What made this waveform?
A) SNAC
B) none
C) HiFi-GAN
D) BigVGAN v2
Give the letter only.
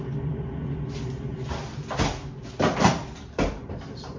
B